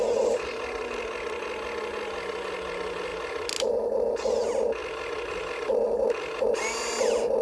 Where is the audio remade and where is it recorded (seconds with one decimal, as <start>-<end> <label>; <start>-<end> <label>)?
0.0-7.4 recorded